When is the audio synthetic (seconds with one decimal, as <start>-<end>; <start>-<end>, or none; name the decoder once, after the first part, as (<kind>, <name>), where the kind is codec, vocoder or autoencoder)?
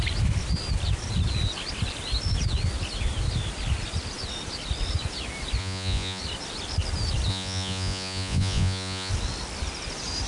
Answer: 5.6-6.2 (vocoder, Vocos); 7.3-9.1